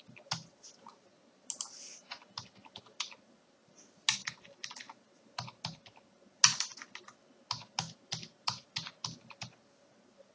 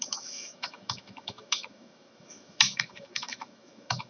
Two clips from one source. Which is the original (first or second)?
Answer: first